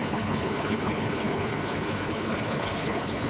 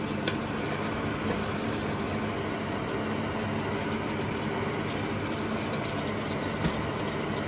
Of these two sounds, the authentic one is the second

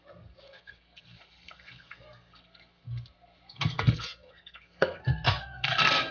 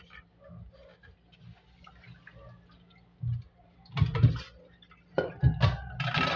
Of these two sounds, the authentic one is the second